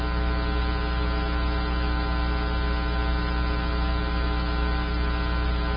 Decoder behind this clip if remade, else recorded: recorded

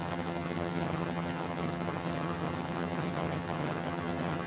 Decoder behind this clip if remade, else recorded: remade, vocoder, HiFi-GAN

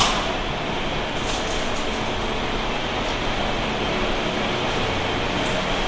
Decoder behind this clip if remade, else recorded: recorded